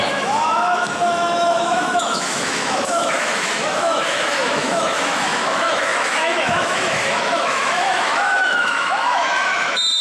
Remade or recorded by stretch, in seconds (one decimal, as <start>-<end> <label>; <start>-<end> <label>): 0.0-10.0 remade